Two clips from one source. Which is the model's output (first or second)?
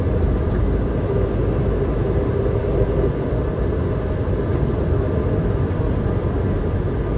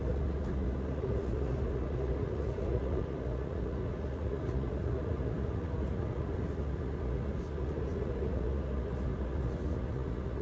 second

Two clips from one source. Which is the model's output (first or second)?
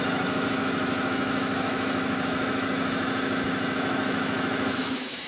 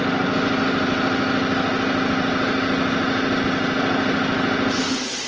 first